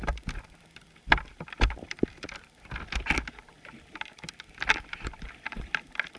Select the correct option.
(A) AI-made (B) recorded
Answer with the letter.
A